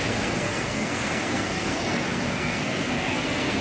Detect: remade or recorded remade